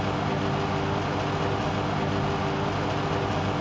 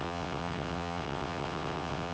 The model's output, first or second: second